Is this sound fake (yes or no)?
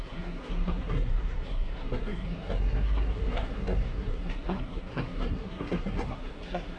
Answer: yes